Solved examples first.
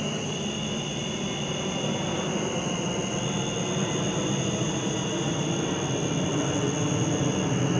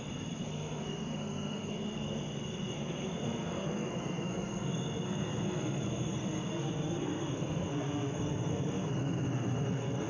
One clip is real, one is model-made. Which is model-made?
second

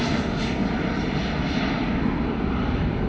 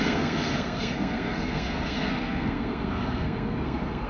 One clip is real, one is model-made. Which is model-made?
second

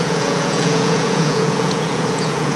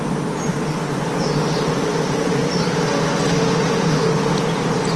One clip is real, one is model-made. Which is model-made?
first